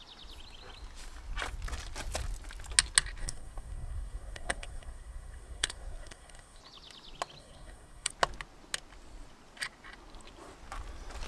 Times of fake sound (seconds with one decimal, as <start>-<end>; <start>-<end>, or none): 3.2-6.6; 7.4-8.1